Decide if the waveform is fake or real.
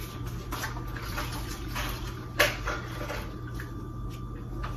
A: real